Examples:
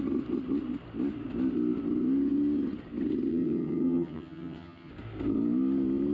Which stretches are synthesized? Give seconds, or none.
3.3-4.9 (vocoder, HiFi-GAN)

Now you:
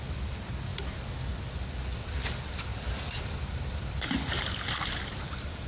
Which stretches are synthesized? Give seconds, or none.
none

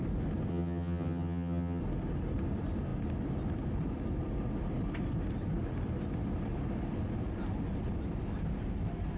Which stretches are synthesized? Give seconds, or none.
0.5-1.8 (vocoder, HiFi-GAN)

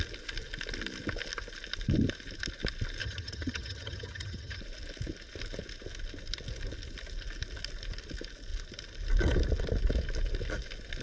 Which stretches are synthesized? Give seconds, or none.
3.0-4.6 (vocoder, HiFi-GAN)

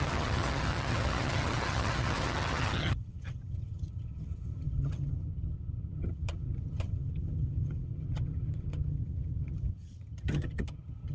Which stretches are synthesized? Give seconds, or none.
0.0-11.1 (vocoder, HiFi-GAN)

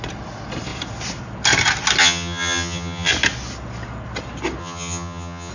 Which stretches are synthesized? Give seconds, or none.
2.0-3.1 (vocoder, HiFi-GAN); 4.6-5.5

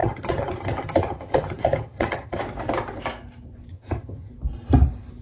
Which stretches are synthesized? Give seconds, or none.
0.0-2.4 (vocoder, HiFi-GAN); 3.7-4.3

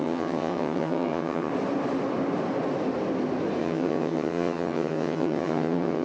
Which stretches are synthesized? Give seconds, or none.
0.0-1.5 (vocoder, HiFi-GAN); 3.6-6.0